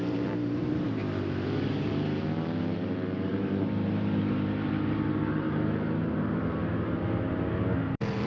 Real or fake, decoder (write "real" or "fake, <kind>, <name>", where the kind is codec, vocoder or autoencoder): fake, vocoder, BigVGAN v2